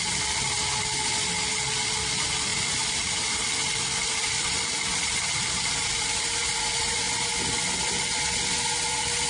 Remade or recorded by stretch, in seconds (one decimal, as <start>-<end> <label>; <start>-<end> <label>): 0.0-2.5 recorded; 2.5-6.6 remade; 6.6-9.3 recorded